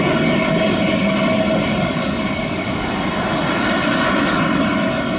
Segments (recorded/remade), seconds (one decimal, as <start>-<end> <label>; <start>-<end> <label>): 0.0-2.0 recorded; 2.0-2.9 remade; 2.9-5.2 recorded